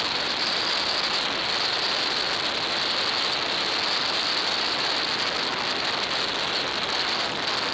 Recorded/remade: recorded